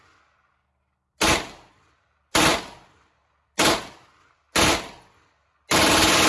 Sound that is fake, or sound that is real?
real